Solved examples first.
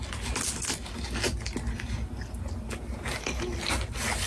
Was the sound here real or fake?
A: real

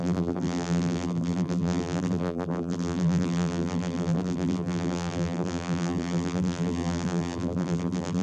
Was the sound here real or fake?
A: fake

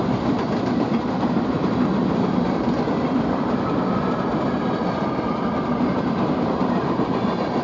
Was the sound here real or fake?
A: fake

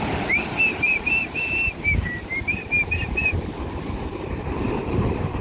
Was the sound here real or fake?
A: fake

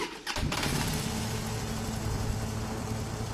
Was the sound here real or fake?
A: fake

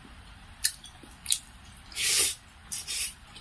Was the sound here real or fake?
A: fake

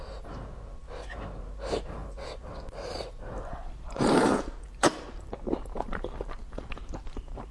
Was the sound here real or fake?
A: fake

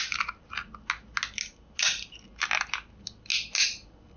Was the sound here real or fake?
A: real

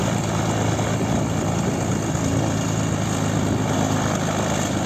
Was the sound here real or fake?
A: real